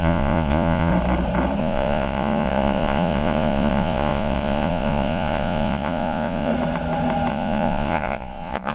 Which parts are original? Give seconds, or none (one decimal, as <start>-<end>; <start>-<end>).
0.9-1.6; 6.5-7.3